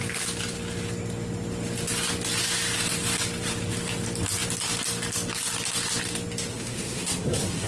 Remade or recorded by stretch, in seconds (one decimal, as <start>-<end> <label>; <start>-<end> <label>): 0.0-6.5 recorded; 6.5-7.7 remade